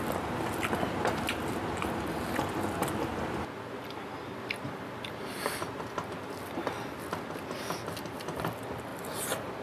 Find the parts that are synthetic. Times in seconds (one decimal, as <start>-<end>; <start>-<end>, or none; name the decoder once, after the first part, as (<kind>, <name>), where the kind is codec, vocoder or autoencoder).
8.9-9.6 (vocoder, BigVGAN v2)